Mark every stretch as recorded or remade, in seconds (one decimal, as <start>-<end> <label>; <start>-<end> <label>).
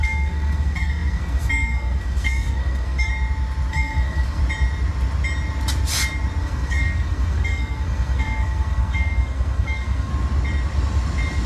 0.0-3.1 remade; 3.1-3.7 recorded; 3.7-4.4 remade; 4.4-6.4 recorded; 6.4-10.1 remade; 10.1-11.5 recorded